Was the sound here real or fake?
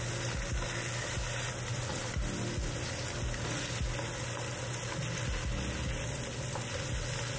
real